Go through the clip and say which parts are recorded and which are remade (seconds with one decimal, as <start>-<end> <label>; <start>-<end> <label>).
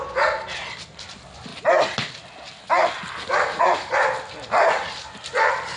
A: 0.0-5.8 recorded